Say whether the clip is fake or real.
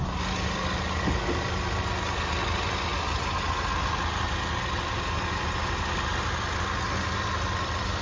real